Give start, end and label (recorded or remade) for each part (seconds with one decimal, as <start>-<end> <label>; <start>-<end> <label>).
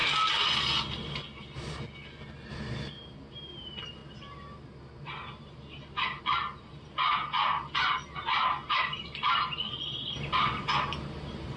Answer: 0.0-2.7 recorded; 2.7-4.0 remade; 4.0-6.2 recorded; 6.2-8.6 remade; 8.6-10.8 recorded; 10.8-11.6 remade